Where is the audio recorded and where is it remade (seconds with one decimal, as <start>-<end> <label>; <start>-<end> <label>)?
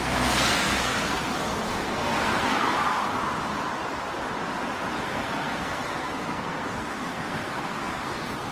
0.0-3.1 remade; 3.1-5.0 recorded; 5.0-8.5 remade